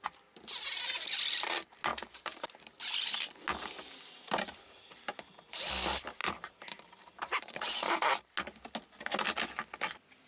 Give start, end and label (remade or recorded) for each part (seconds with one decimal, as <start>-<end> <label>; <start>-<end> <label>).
0.0-1.9 recorded; 1.9-2.6 remade; 2.6-6.2 recorded; 6.2-8.3 remade; 8.3-10.3 recorded